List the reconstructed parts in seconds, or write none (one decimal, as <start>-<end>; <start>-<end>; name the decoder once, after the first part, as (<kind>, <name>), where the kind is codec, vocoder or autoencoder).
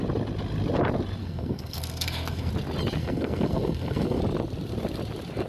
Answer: 1.2-2.5 (codec, SNAC); 3.0-4.2